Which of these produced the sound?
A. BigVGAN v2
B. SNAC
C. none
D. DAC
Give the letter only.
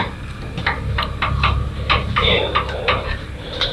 C